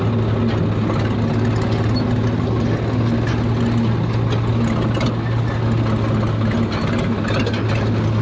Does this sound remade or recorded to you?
recorded